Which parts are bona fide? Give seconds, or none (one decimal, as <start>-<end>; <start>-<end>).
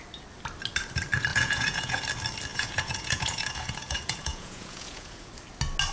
0.0-1.3; 2.0-2.5; 5.3-5.9